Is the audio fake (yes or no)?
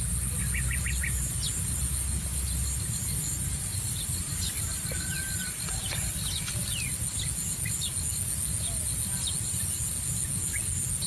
no